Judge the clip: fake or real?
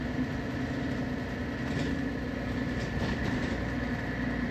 real